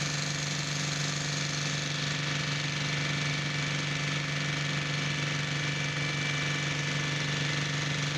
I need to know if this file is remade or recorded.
recorded